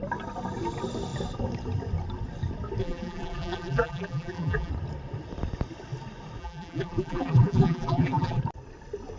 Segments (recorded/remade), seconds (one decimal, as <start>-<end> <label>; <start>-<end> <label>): 0.0-2.8 recorded; 2.8-4.7 remade; 4.7-6.4 recorded; 6.4-8.4 remade; 8.4-9.2 recorded